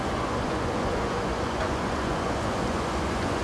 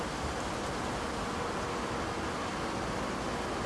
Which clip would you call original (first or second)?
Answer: second